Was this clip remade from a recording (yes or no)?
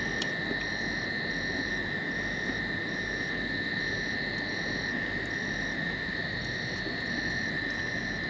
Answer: no